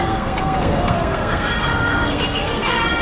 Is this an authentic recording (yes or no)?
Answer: no